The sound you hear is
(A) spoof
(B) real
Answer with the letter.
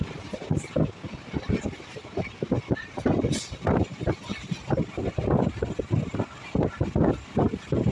B